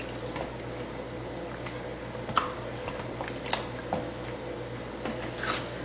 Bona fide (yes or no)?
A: yes